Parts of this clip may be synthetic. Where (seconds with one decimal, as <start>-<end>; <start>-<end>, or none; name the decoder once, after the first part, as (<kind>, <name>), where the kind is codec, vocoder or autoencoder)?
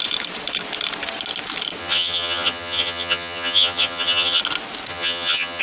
1.8-4.4 (vocoder, HiFi-GAN); 4.9-5.6